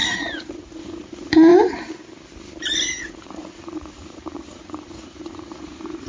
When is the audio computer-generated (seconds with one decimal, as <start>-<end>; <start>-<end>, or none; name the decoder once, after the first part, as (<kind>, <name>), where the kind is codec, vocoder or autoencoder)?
0.0-1.5 (vocoder, Vocos); 3.0-6.1